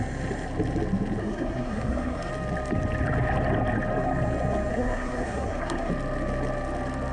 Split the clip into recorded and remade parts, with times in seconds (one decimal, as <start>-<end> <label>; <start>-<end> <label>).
0.0-1.2 recorded; 1.2-2.3 remade; 2.3-4.7 recorded; 4.7-5.9 remade; 5.9-7.1 recorded